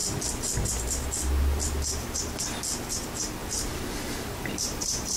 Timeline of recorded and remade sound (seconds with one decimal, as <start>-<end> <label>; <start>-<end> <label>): 0.0-3.4 recorded; 3.4-5.2 remade